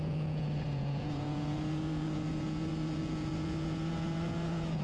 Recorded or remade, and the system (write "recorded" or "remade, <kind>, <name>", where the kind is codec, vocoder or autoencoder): remade, vocoder, Vocos